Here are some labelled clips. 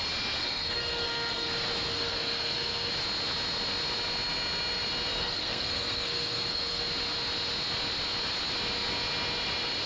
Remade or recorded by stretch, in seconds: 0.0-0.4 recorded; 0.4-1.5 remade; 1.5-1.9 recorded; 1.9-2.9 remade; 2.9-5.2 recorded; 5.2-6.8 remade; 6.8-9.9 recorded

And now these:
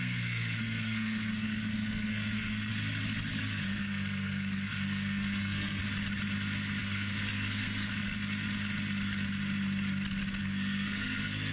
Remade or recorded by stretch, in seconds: 0.0-2.7 remade; 2.7-3.4 recorded; 3.4-5.8 remade; 5.8-6.8 recorded; 6.8-7.9 remade; 7.9-10.4 recorded; 10.4-11.5 remade

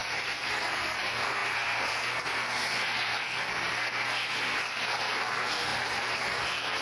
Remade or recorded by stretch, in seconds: 0.0-6.8 remade

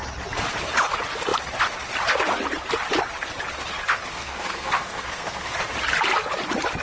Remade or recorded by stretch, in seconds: 0.0-4.1 recorded; 4.1-5.6 remade; 5.6-6.8 recorded

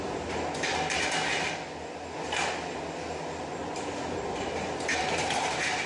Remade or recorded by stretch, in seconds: 0.0-5.9 recorded

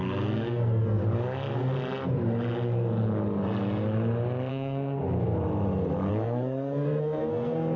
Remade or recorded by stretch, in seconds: 0.0-1.0 remade; 1.0-4.5 recorded; 4.5-5.0 remade; 5.0-6.1 recorded; 6.1-7.8 remade

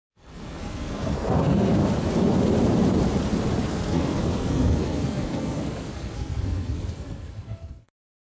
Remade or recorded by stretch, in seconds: 0.0-1.8 remade; 1.8-3.7 recorded; 3.7-8.4 remade